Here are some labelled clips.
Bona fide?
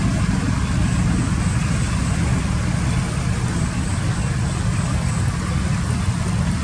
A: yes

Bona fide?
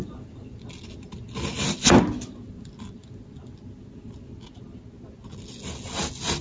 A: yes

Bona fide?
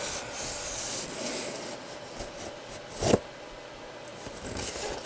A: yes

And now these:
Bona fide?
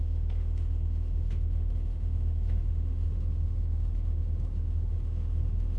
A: no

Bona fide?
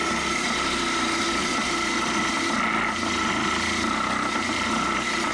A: yes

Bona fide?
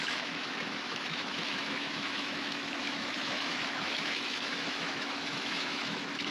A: no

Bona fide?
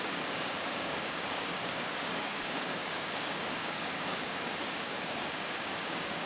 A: no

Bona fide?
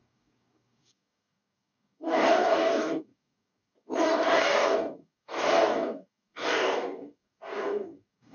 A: no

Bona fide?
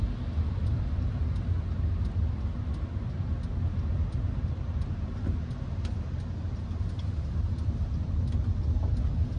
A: yes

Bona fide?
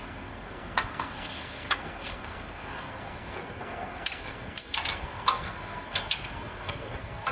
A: no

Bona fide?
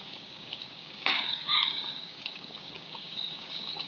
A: no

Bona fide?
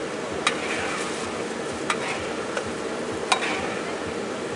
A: yes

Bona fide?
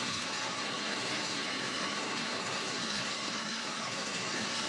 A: no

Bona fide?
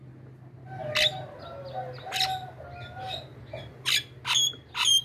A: yes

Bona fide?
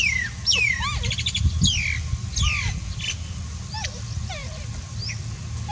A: yes